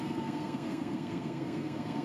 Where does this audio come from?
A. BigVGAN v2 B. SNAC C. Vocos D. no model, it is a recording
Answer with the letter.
B